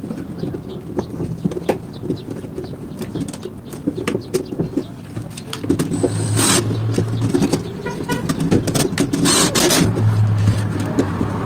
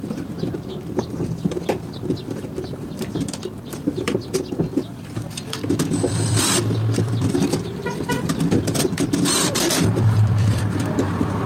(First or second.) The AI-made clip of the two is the second